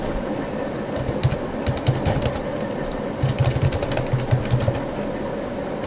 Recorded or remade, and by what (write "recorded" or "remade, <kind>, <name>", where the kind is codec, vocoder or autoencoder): recorded